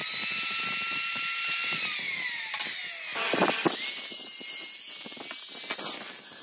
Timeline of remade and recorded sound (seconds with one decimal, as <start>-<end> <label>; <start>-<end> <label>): 0.0-6.4 recorded

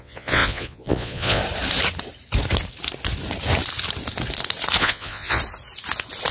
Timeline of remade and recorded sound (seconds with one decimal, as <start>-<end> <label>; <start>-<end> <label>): 0.0-1.4 remade; 1.4-4.8 recorded; 4.8-5.4 remade; 5.4-6.3 recorded

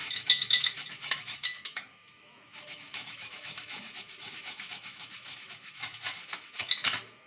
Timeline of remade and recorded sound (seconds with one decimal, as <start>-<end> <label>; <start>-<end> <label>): 0.0-7.3 remade

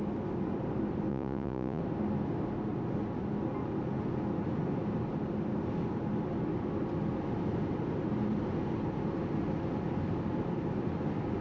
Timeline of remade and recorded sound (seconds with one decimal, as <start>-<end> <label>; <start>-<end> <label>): 0.0-1.1 recorded; 1.1-1.8 remade; 1.8-11.4 recorded

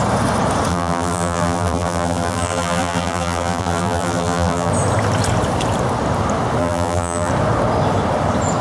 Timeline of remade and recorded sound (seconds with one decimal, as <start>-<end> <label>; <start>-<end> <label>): 0.0-0.7 recorded; 0.7-4.7 remade; 4.7-6.6 recorded; 6.6-7.3 remade; 7.3-8.6 recorded